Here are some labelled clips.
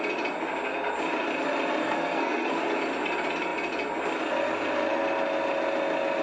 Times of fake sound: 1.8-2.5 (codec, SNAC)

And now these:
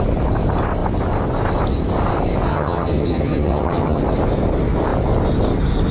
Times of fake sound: 2.5-4.0 (vocoder, HiFi-GAN)

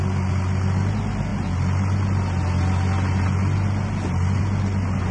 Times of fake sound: none

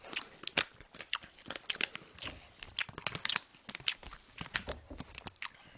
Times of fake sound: none

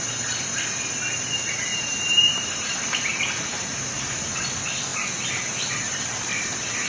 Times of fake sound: 1.7-4.2 (vocoder, BigVGAN v2)

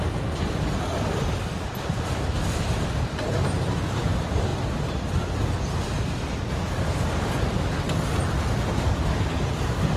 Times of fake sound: none

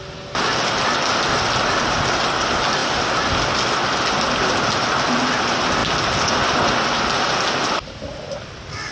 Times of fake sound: none

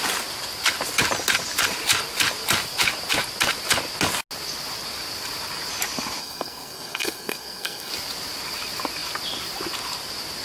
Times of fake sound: 6.2-7.9 (codec, SNAC)